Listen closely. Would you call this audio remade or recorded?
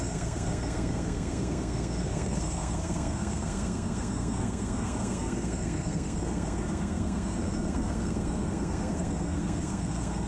remade